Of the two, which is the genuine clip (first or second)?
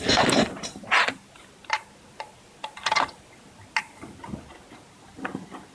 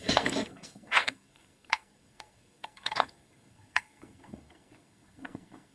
first